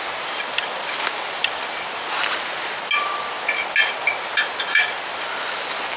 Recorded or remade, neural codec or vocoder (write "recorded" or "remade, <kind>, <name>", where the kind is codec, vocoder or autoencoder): recorded